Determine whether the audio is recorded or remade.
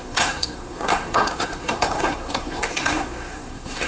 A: remade